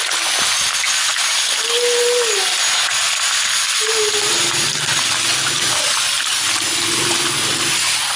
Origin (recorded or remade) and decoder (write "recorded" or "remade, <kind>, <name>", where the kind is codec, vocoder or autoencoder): recorded